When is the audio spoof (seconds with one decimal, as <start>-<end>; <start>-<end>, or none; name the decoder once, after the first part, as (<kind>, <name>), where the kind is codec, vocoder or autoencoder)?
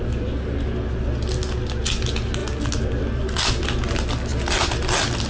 none